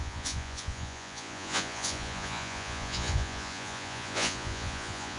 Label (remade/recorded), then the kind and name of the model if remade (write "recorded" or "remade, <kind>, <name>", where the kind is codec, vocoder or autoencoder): remade, vocoder, Vocos